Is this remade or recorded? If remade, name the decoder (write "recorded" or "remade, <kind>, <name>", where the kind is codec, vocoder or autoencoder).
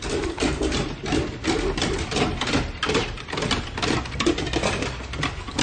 remade, vocoder, BigVGAN v2